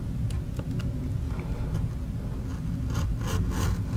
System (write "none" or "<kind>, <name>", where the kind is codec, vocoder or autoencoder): none